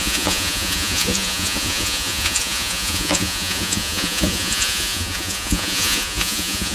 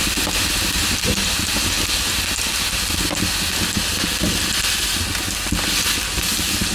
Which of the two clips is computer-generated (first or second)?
first